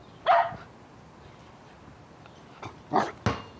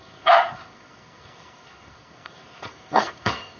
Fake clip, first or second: second